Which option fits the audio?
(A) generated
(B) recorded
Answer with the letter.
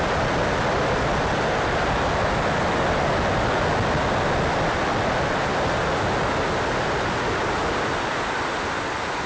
B